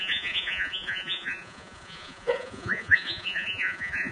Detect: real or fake fake